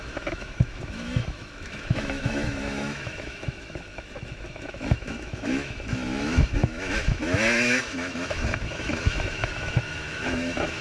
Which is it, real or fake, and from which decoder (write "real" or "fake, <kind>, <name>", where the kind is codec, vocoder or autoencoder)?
fake, autoencoder, DAC-VAE